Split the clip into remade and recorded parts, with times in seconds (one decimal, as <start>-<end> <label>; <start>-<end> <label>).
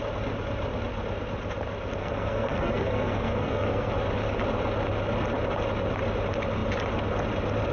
0.0-2.0 recorded; 2.0-3.9 remade; 3.9-7.7 recorded